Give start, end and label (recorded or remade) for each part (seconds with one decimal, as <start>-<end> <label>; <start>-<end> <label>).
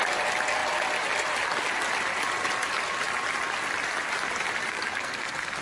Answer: 0.0-4.7 recorded; 4.7-5.6 remade